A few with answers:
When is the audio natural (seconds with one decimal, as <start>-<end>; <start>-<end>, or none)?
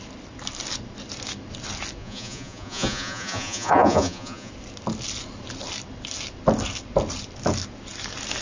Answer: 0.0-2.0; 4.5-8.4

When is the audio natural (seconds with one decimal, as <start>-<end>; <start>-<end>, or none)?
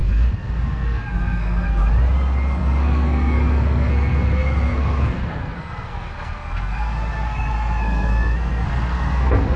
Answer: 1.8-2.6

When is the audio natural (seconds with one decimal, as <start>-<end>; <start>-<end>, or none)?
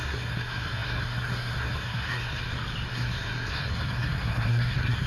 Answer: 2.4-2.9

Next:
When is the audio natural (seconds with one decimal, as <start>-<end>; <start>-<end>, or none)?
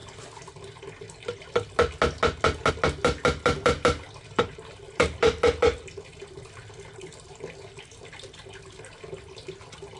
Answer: 0.0-10.0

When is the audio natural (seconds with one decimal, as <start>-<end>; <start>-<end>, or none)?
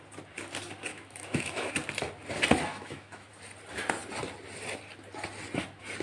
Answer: 0.0-0.9; 1.7-2.7; 3.3-6.0